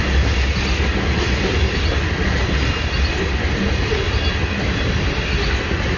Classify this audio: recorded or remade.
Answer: recorded